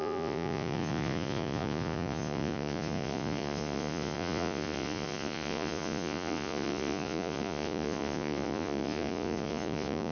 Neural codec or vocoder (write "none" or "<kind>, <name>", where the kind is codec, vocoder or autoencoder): vocoder, Vocos